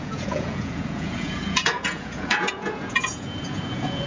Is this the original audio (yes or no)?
no